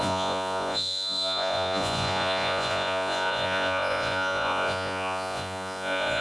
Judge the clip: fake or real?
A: fake